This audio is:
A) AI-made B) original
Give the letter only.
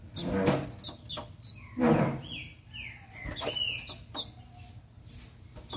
B